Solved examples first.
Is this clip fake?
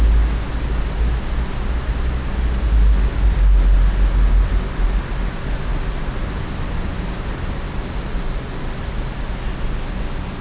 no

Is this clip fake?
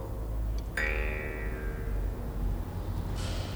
no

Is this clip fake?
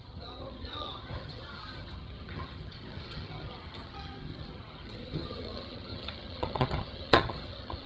yes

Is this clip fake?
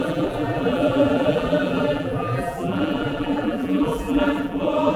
yes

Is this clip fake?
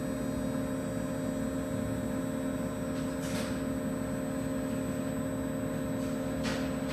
no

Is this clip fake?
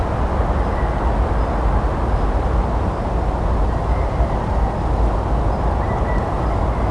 no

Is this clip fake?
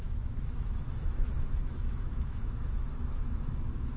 yes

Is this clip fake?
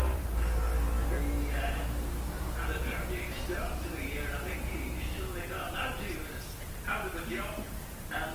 no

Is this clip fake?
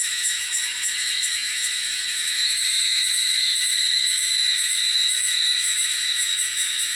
yes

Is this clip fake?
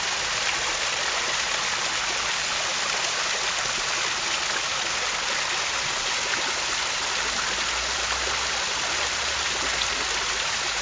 no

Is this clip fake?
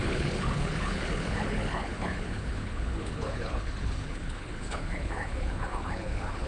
yes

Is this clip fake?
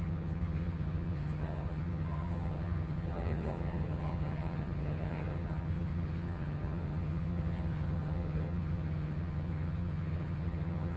yes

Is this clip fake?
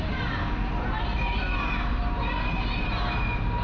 no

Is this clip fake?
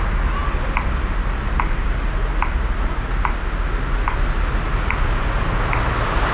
no